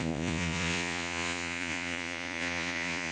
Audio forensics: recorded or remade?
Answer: remade